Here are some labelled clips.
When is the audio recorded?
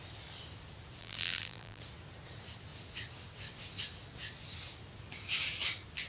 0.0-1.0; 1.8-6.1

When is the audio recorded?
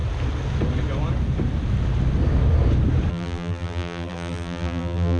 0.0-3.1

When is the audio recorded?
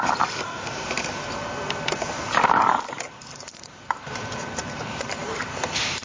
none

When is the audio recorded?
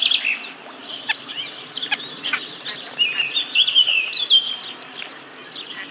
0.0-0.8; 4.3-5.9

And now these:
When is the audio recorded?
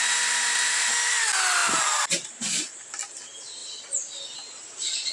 0.0-1.6; 2.6-5.1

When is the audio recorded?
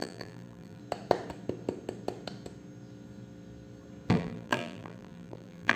0.8-4.1